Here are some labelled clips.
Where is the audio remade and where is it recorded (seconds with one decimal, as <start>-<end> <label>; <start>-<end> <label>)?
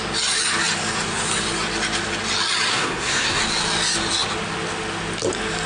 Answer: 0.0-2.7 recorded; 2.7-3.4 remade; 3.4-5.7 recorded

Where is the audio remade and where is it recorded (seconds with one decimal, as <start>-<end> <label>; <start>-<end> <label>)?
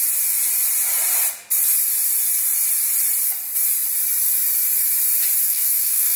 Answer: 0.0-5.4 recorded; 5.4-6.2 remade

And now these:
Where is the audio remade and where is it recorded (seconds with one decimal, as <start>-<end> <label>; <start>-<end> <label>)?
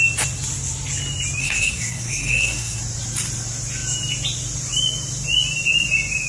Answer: 0.0-1.4 recorded; 1.4-2.8 remade; 2.8-6.3 recorded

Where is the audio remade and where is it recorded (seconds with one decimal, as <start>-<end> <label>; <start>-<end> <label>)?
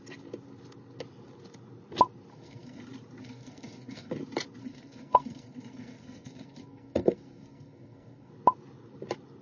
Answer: 0.0-2.3 recorded; 2.3-2.8 remade; 2.8-3.2 recorded; 3.2-4.1 remade; 4.1-4.6 recorded; 4.6-8.3 remade; 8.3-9.4 recorded